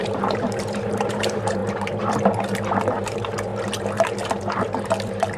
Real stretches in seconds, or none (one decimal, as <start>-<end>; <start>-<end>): 1.6-2.9; 3.5-4.6